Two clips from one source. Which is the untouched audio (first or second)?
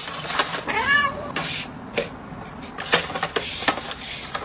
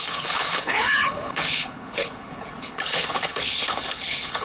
first